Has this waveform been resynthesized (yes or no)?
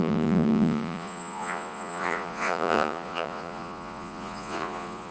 yes